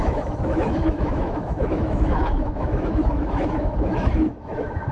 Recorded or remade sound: remade